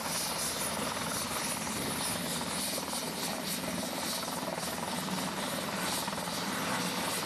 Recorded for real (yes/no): yes